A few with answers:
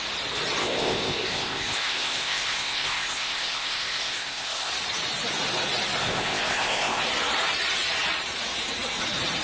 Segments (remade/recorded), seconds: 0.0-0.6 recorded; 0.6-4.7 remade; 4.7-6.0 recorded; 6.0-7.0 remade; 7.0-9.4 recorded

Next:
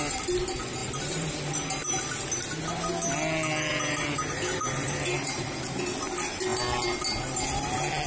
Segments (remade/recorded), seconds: 0.0-0.8 recorded; 0.8-2.0 remade; 2.0-3.7 recorded; 3.7-5.4 remade; 5.4-8.1 recorded

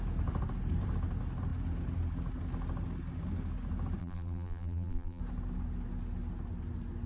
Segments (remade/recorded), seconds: 0.0-4.0 recorded; 4.0-5.2 remade; 5.2-7.1 recorded

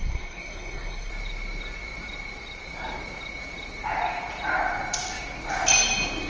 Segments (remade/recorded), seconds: 0.0-1.1 remade; 1.1-6.3 recorded

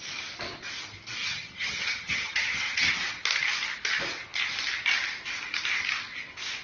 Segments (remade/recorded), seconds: 0.0-1.2 recorded; 1.2-2.9 remade; 2.9-6.6 recorded

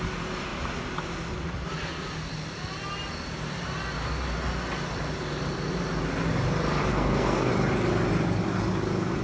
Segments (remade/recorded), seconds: 0.0-6.9 recorded; 6.9-7.5 remade; 7.5-9.2 recorded